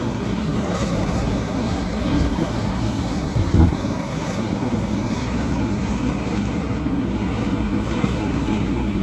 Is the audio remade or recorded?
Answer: remade